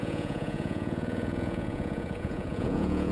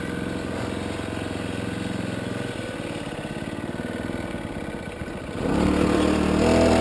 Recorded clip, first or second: second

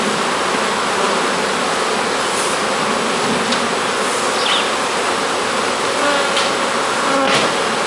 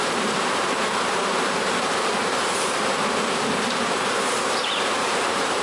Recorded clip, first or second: first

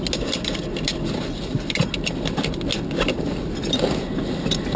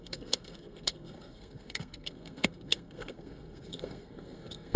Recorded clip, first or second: first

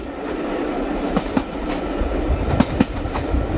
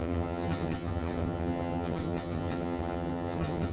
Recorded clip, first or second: first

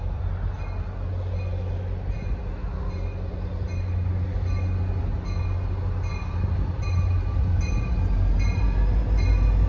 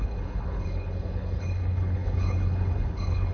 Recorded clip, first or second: first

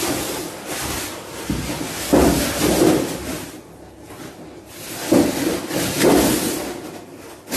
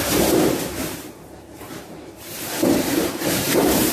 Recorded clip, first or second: first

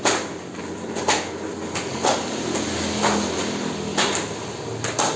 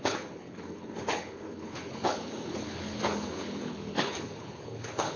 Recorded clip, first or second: first